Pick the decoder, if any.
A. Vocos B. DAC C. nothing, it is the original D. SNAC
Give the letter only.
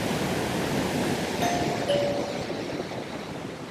C